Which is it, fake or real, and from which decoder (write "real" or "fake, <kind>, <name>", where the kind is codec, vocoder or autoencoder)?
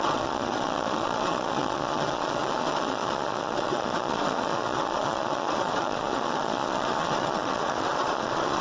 fake, vocoder, Vocos